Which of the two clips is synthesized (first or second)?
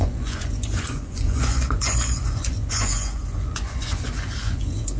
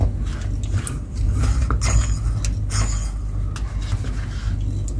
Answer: first